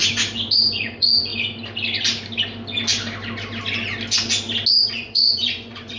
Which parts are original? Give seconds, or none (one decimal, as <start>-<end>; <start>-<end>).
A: 0.0-0.7; 1.3-4.9